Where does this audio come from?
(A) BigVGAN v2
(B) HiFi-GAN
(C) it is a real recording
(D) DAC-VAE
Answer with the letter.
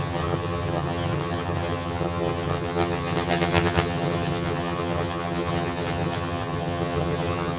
B